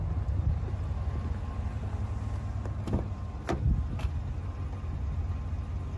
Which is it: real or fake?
real